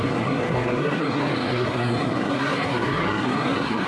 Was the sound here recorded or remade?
remade